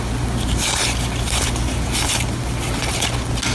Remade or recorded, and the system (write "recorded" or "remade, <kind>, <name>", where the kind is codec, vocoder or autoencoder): recorded